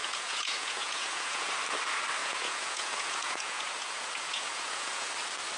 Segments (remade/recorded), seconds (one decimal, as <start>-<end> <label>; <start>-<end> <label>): 0.0-1.5 remade; 1.5-2.2 recorded; 2.2-5.1 remade; 5.1-5.6 recorded